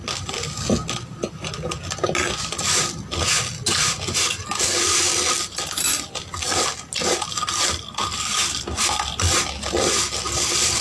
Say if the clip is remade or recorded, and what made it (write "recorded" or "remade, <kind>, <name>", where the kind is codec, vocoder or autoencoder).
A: recorded